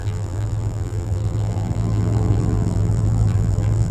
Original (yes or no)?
no